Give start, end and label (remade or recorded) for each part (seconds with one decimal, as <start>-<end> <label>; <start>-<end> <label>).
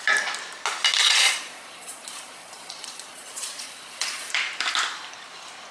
0.0-1.0 recorded; 1.0-4.3 remade; 4.3-5.7 recorded